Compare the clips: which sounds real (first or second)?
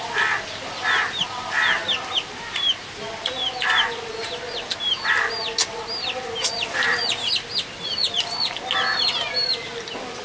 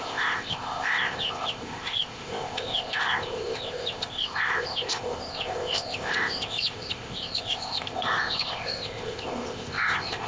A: first